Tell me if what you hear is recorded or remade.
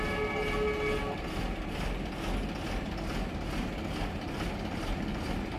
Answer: recorded